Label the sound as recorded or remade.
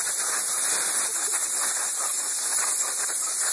recorded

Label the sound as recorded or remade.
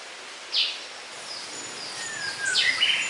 recorded